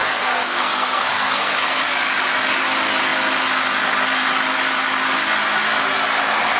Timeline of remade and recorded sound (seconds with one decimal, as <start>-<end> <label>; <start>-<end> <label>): 0.0-1.8 remade; 1.8-6.6 recorded